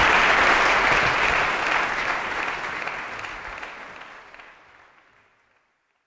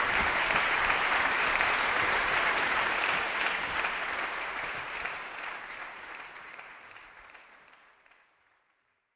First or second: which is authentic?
first